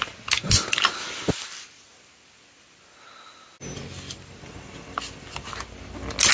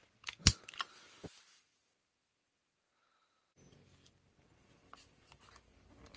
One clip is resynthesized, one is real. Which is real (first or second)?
first